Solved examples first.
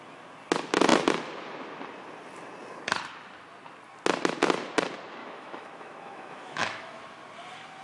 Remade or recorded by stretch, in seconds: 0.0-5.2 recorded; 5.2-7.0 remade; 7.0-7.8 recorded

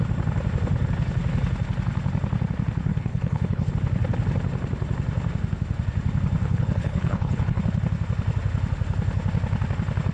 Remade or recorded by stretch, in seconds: 0.0-2.9 recorded; 2.9-3.7 remade; 3.7-6.4 recorded; 6.4-7.6 remade; 7.6-10.1 recorded

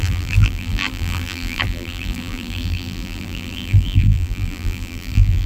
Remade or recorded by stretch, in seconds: 0.0-5.5 remade

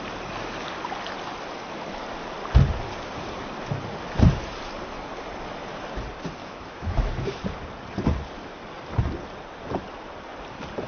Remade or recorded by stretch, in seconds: 0.0-6.4 recorded; 6.4-7.1 remade; 7.1-10.9 recorded